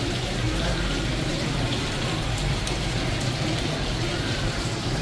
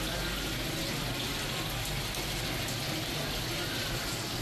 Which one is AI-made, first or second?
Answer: first